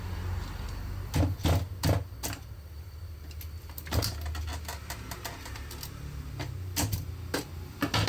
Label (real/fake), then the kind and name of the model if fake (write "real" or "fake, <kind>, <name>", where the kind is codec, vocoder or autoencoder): real